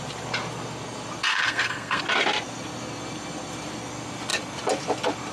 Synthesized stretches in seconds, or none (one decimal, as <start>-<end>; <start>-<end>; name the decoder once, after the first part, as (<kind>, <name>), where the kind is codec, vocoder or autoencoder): 1.3-2.0 (codec, SNAC)